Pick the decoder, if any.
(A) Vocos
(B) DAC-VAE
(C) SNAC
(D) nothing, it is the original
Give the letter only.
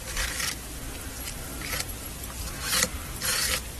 D